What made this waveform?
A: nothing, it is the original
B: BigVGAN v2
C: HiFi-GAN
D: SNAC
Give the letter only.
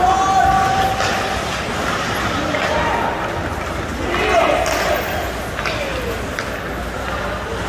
A